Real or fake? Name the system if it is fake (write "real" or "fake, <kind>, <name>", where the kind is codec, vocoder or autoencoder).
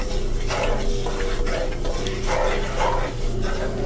real